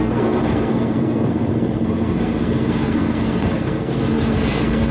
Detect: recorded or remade remade